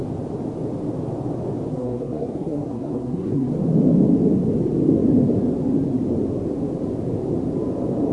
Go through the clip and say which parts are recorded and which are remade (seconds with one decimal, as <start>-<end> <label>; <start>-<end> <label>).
0.0-1.7 recorded; 1.7-3.5 remade; 3.5-8.1 recorded